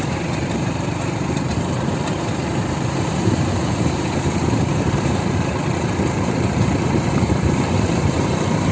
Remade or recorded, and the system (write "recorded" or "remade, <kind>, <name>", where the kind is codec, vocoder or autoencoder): remade, vocoder, BigVGAN v2